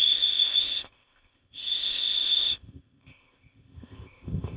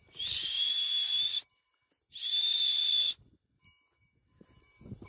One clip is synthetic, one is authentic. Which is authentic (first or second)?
second